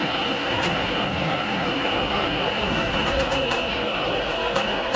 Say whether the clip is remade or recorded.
remade